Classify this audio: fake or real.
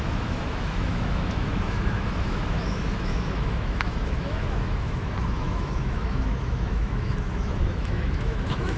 fake